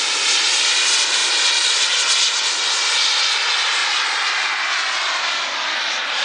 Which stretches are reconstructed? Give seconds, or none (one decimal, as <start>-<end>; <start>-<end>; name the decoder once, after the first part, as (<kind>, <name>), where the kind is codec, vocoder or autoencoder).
none